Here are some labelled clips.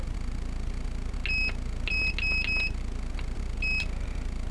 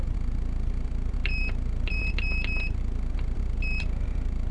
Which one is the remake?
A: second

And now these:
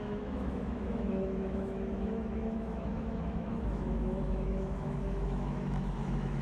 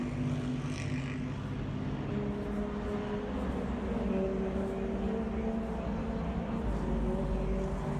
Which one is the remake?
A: first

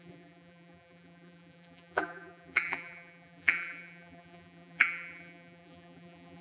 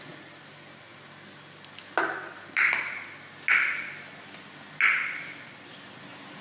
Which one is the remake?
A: first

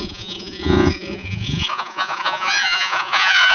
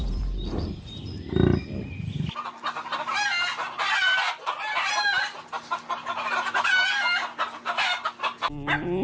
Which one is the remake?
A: first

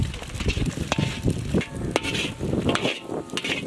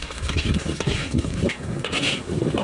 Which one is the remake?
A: second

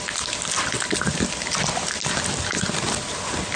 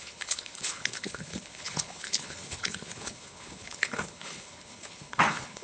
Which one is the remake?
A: second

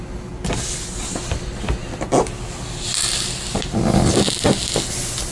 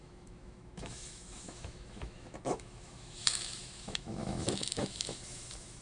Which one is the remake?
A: second